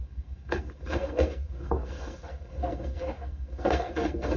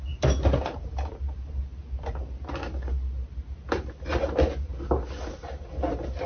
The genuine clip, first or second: second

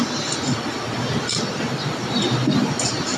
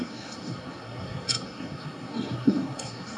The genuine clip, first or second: first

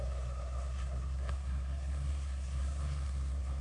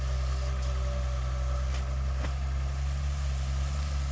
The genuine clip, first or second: second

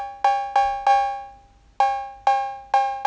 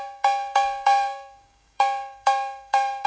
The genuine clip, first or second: first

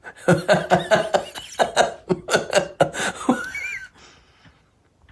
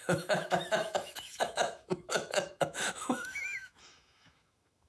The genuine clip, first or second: first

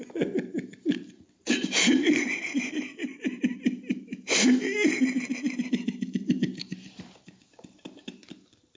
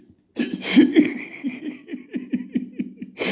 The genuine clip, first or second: second